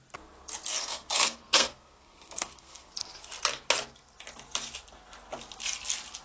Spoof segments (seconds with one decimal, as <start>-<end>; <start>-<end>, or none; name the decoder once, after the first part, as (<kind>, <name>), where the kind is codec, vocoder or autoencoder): 0.7-2.9 (codec, SNAC)